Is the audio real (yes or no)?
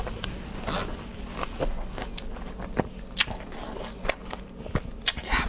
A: yes